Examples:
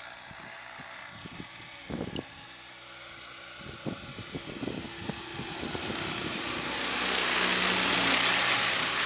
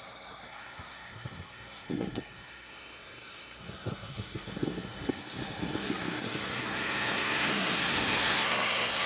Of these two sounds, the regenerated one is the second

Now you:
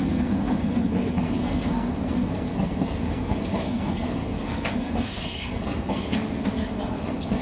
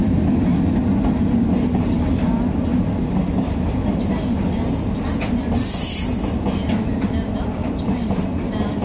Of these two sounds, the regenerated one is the first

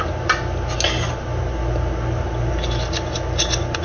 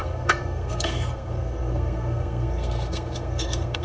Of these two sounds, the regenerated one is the second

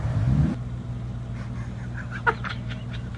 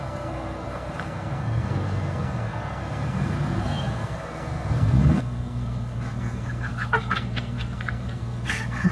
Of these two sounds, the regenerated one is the second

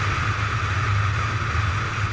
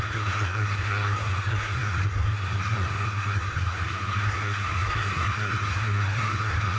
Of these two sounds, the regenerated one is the second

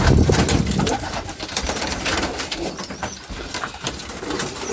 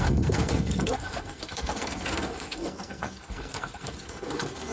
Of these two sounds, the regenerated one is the second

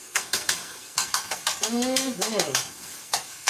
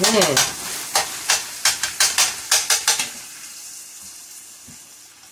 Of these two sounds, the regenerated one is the first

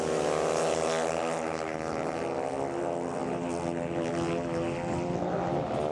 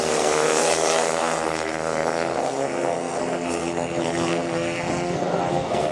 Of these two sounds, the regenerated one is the second